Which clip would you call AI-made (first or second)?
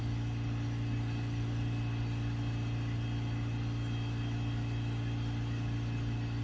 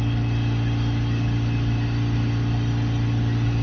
second